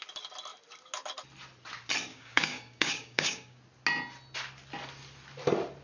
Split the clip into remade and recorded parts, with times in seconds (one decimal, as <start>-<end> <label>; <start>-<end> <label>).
0.0-2.1 recorded; 2.1-3.6 remade; 3.6-5.8 recorded